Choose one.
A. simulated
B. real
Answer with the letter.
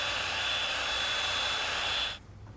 B